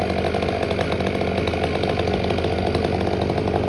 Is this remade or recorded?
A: recorded